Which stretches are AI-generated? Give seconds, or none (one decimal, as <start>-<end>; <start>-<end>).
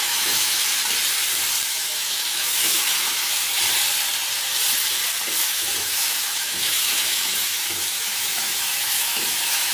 0.0-0.8; 1.7-3.6; 5.4-9.7